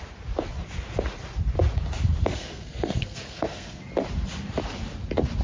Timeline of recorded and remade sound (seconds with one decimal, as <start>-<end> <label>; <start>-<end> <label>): 0.0-2.2 recorded; 2.2-3.8 remade; 3.8-5.4 recorded